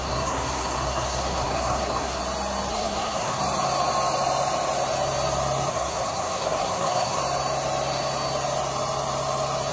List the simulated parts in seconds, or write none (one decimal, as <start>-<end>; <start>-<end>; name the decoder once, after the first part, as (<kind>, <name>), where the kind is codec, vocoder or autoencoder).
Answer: 0.0-2.2 (codec, SNAC); 2.7-3.4; 5.7-7.2